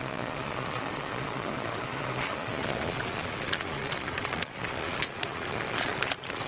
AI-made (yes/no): yes